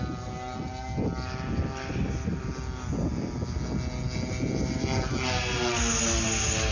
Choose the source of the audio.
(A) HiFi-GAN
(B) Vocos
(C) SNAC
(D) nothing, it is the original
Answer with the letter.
D